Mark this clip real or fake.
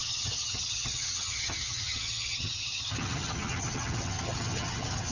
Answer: fake